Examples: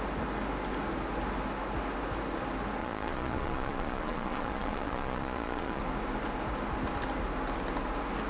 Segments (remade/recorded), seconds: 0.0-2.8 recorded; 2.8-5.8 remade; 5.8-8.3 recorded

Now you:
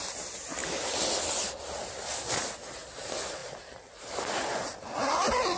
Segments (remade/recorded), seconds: 0.0-5.6 recorded

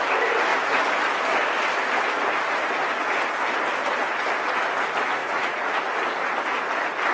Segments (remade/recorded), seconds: 0.0-5.2 recorded; 5.2-5.8 remade; 5.8-7.1 recorded

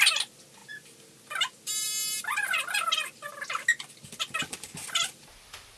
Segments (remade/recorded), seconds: 0.0-5.8 recorded

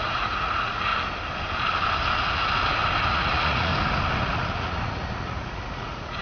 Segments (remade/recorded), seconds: 0.0-0.9 remade; 0.9-3.1 recorded; 3.1-3.7 remade; 3.7-4.2 recorded; 4.2-6.2 remade